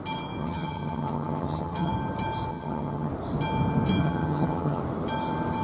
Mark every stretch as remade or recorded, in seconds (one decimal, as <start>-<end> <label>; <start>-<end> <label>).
0.0-0.4 recorded; 0.4-1.9 remade; 1.9-2.5 recorded; 2.5-3.1 remade; 3.1-4.0 recorded; 4.0-4.8 remade; 4.8-5.6 recorded